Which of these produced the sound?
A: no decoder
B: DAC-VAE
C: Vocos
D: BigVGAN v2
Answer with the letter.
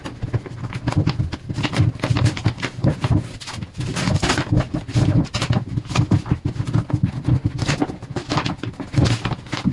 A